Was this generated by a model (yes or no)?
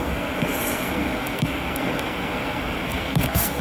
yes